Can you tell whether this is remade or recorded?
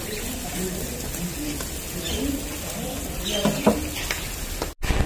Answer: recorded